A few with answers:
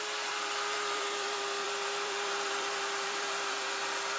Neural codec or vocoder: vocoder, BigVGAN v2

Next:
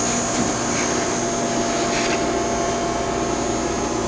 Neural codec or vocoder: none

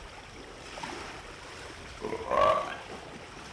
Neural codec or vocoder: none